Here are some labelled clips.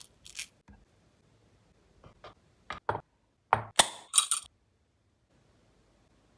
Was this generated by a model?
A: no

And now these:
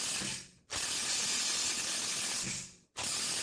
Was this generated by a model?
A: no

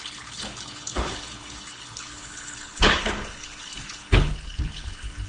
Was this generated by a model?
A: yes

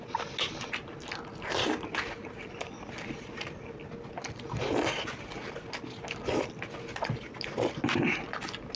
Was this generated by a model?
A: no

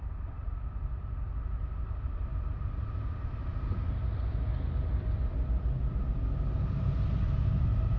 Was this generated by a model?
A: no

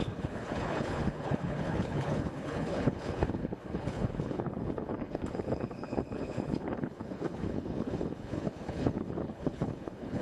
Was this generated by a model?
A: yes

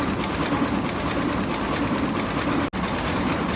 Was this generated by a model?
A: no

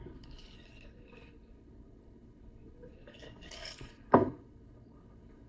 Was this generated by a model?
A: yes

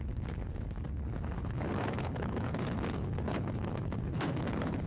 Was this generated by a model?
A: yes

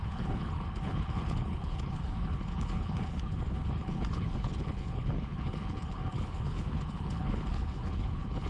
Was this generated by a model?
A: yes